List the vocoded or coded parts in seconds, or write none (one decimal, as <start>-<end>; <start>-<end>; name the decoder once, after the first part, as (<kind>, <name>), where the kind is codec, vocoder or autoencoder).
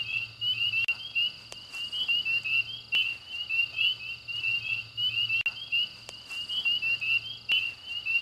none